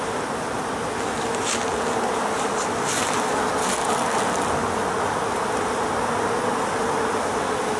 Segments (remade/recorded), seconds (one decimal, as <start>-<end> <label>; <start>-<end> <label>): 0.0-7.8 recorded